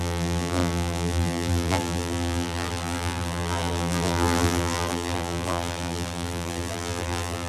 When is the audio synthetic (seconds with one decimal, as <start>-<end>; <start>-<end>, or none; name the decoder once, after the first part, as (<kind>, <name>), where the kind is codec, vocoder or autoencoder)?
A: 0.0-7.5 (vocoder, BigVGAN v2)